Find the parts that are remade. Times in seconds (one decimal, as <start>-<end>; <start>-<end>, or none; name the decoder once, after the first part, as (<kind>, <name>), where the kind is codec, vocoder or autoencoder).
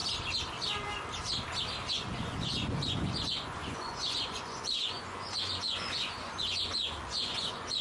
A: 1.9-7.8 (vocoder, Vocos)